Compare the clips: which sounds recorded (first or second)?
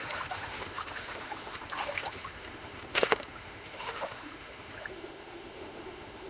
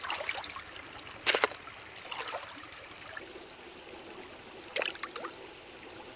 second